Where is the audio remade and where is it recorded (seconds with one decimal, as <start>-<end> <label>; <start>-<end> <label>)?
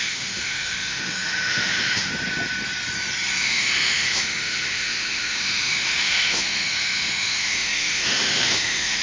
0.0-2.1 remade; 2.1-3.4 recorded; 3.4-9.0 remade